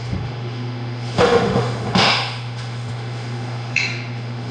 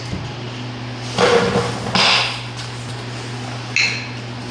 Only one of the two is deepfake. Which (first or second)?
first